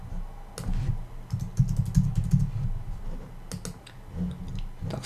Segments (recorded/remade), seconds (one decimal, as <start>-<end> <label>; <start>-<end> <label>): 0.0-5.1 recorded

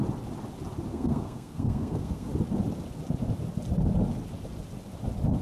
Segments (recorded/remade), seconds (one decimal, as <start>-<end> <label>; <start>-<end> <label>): 0.0-0.9 recorded; 0.9-2.3 remade; 2.3-5.4 recorded

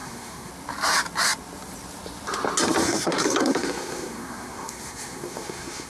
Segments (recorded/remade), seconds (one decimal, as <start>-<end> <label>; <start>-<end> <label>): 0.0-0.5 remade; 0.5-2.8 recorded; 2.8-5.9 remade

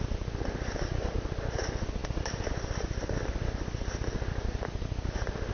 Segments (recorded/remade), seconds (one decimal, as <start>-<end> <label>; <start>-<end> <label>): 0.0-5.5 recorded

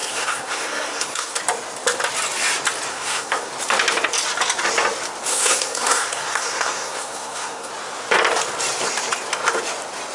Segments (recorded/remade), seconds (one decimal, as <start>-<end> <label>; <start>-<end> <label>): 0.0-1.4 remade; 1.4-2.9 recorded; 2.9-3.5 remade; 3.5-5.3 recorded; 5.3-7.7 remade; 7.7-10.1 recorded